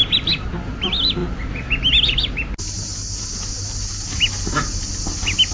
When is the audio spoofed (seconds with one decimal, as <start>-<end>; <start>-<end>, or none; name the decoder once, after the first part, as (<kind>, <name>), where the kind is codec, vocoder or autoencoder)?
none